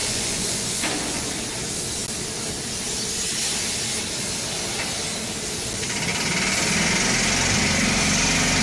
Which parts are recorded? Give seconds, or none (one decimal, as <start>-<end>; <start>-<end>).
1.3-8.6